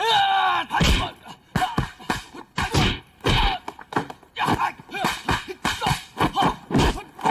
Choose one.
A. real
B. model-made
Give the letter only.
A